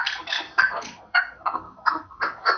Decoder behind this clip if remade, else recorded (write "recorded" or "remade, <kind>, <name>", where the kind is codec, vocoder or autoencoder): remade, codec, SNAC